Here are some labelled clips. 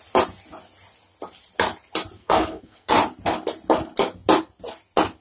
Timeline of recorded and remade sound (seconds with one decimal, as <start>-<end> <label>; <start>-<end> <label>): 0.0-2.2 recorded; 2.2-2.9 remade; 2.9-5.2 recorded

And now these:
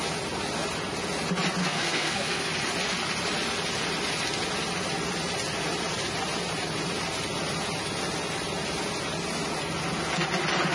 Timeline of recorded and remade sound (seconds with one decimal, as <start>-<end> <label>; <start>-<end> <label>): 0.0-1.6 recorded; 1.6-2.4 remade; 2.4-10.7 recorded

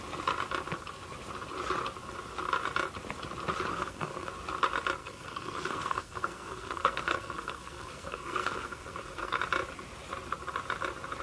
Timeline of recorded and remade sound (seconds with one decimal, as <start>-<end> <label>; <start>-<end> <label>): 0.0-3.7 recorded; 3.7-4.3 remade; 4.3-5.0 recorded; 5.0-9.4 remade; 9.4-11.2 recorded

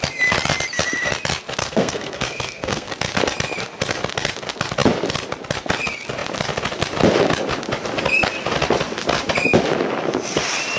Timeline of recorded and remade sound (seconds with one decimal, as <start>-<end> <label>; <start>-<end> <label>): 0.0-1.6 recorded; 1.6-2.9 remade; 2.9-10.8 recorded

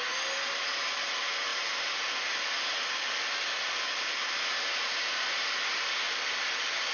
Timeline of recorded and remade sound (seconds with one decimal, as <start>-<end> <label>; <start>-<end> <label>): 0.0-6.9 recorded

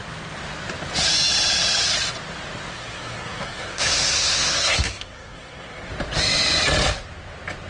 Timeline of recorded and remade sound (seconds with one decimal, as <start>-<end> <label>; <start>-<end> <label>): 0.0-2.7 recorded; 2.7-5.9 remade; 5.9-7.7 recorded

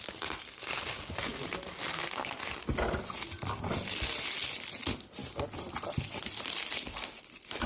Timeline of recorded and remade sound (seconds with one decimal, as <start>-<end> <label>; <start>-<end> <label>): 0.0-7.7 recorded

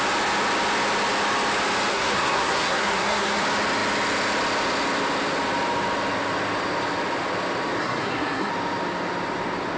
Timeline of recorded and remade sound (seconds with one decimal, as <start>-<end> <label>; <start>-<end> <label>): 0.0-1.9 recorded; 1.9-3.4 remade; 3.4-7.8 recorded; 7.8-8.5 remade; 8.5-9.8 recorded